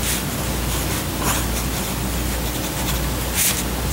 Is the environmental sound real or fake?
real